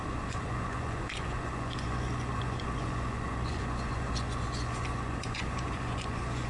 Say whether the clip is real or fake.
fake